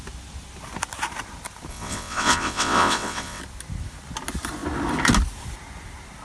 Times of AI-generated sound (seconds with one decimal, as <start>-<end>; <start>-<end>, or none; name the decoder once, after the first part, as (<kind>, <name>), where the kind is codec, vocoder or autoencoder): 1.7-3.4 (vocoder, WaveNeXt)